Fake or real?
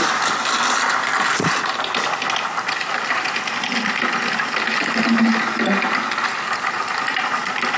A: real